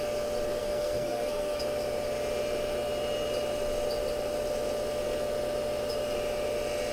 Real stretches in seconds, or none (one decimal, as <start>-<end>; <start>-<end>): 0.0-0.6; 1.6-6.9